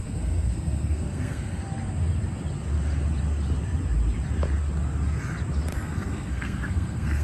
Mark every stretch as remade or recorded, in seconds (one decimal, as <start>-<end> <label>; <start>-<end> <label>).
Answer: 0.0-1.6 remade; 1.6-5.7 recorded; 5.7-7.2 remade

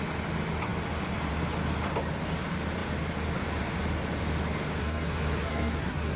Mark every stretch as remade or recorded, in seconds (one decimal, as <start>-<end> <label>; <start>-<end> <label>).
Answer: 0.0-4.8 recorded; 4.8-6.2 remade

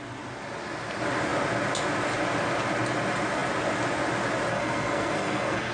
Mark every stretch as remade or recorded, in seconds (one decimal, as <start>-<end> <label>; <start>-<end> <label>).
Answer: 0.0-4.5 recorded; 4.5-5.7 remade

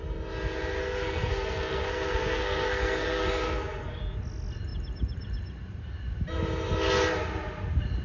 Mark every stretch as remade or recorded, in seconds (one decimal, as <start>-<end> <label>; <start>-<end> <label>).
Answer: 0.0-0.8 recorded; 0.8-4.0 remade; 4.0-8.0 recorded